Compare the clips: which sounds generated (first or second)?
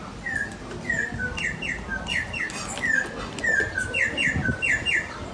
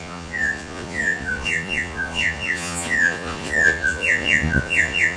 second